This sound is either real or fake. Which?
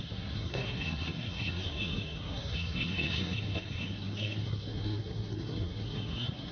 fake